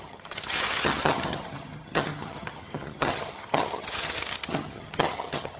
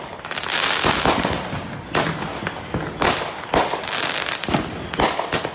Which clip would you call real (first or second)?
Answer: second